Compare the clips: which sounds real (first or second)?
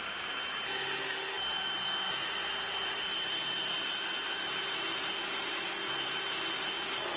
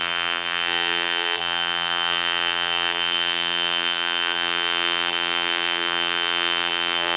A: first